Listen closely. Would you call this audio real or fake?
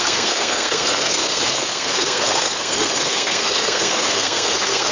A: fake